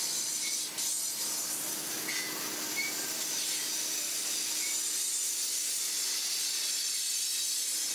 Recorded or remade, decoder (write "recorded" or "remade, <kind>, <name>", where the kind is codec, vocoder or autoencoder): recorded